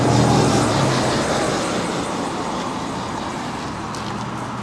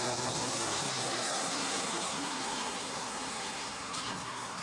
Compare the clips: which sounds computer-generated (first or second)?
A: second